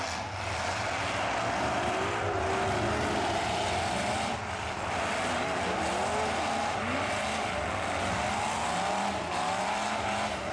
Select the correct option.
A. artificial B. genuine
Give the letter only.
B